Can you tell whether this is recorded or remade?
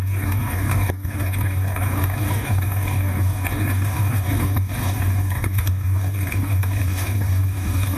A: remade